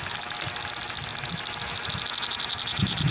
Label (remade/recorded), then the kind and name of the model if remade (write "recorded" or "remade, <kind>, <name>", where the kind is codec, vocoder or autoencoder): recorded